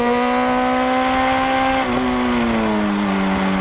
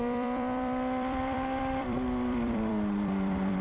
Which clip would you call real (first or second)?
first